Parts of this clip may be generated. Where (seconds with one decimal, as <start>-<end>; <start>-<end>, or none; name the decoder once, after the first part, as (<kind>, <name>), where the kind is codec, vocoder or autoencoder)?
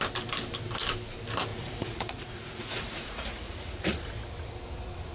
1.5-4.1 (vocoder, Vocos)